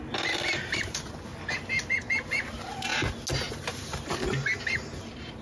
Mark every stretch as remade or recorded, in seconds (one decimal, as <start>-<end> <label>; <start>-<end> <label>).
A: 0.0-1.3 remade; 1.3-2.1 recorded; 2.1-2.9 remade; 2.9-3.5 recorded; 3.5-5.4 remade